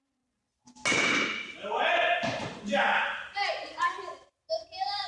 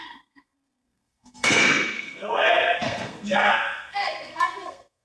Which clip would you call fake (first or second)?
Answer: second